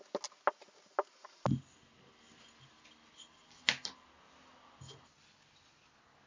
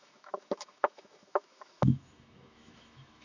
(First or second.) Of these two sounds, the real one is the first